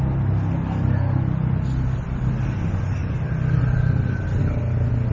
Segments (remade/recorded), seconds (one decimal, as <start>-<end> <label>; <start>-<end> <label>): 0.0-5.1 recorded